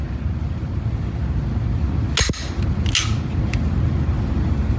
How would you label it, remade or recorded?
recorded